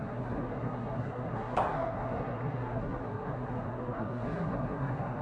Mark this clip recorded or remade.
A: remade